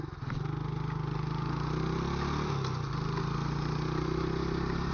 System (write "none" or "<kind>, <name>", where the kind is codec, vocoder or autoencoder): none